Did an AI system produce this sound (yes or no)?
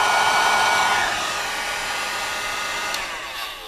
yes